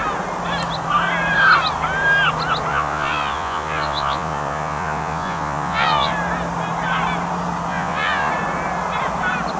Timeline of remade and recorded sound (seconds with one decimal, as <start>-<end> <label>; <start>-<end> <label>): 0.0-2.7 recorded; 2.7-6.1 remade; 6.1-7.7 recorded; 7.7-8.3 remade; 8.3-9.6 recorded